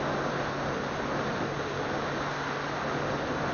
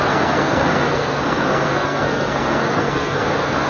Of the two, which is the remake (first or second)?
second